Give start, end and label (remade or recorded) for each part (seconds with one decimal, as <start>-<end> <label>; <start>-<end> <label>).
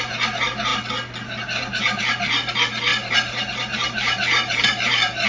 0.0-2.9 recorded; 2.9-5.3 remade